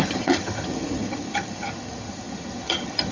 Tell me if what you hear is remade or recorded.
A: remade